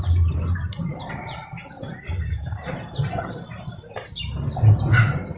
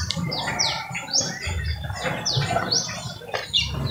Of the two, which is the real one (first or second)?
second